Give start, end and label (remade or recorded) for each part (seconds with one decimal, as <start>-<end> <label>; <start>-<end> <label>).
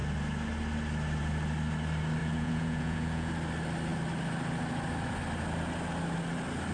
0.0-2.2 recorded; 2.2-3.3 remade; 3.3-6.7 recorded